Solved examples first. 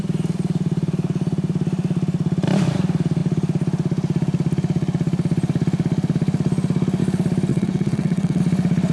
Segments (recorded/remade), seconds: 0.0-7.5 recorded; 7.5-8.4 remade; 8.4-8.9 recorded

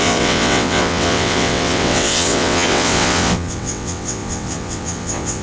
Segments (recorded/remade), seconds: 0.0-5.4 remade

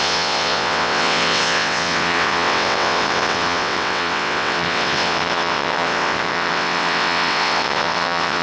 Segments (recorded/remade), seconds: 0.0-8.4 remade

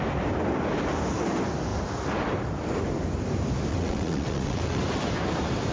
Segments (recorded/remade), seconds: 0.0-3.7 recorded; 3.7-4.8 remade; 4.8-5.7 recorded

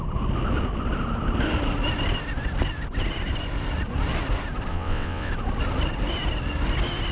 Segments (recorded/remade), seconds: 0.0-4.7 recorded; 4.7-5.3 remade; 5.3-7.1 recorded

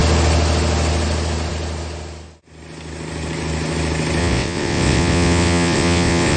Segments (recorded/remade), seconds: 0.0-4.2 recorded; 4.2-6.4 remade

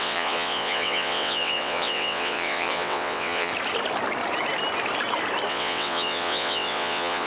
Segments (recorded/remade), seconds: 0.0-3.5 remade; 3.5-5.5 recorded; 5.5-7.3 remade